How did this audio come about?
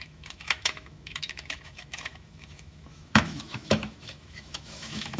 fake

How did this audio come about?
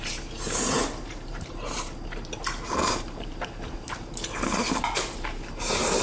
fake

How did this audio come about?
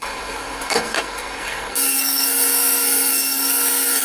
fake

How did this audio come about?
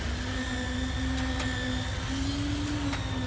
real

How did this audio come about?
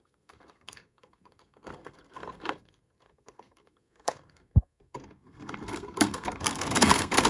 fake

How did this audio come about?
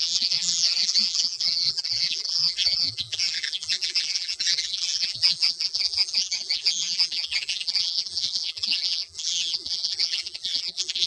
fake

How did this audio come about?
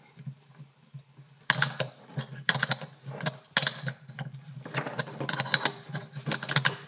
real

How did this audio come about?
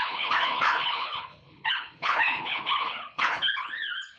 fake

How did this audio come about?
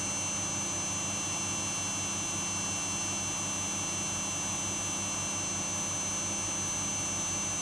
real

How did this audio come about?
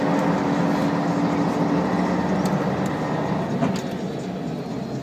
real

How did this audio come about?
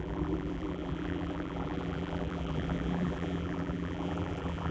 fake